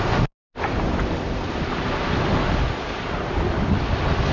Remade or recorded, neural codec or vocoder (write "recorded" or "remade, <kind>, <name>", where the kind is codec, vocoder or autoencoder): recorded